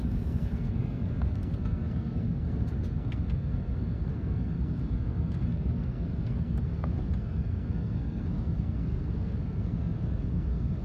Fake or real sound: fake